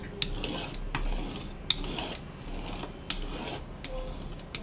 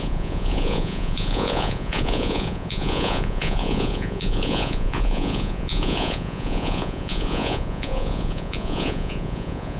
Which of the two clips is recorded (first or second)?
first